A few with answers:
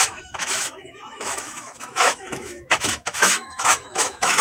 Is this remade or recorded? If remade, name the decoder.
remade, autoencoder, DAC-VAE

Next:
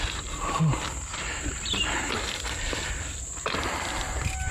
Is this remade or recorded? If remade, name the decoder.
recorded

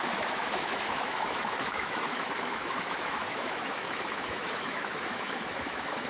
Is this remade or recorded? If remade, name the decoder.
remade, autoencoder, DAC-VAE